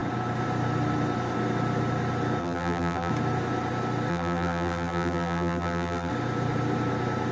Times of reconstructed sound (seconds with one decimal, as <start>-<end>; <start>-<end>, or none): 2.4-3.1; 4.1-6.1